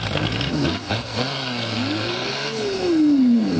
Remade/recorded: remade